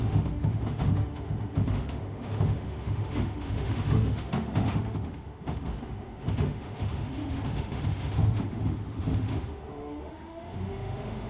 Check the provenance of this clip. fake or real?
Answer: fake